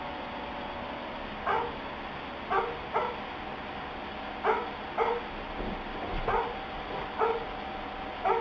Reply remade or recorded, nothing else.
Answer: recorded